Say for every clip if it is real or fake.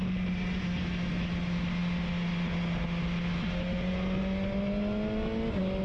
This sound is real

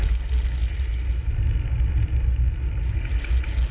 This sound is real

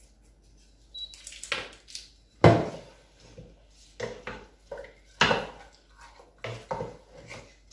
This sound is real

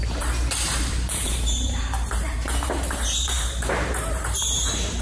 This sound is fake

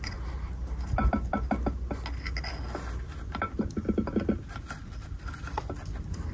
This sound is real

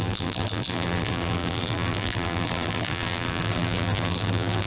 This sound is fake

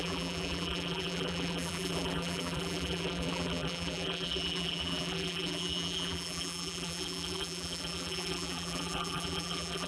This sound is fake